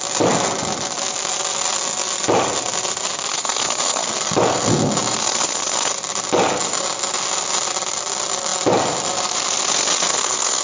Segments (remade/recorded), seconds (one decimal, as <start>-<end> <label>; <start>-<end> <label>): 0.0-3.3 recorded; 3.3-4.1 remade; 4.1-5.2 recorded; 5.2-5.9 remade; 5.9-9.7 recorded; 9.7-10.6 remade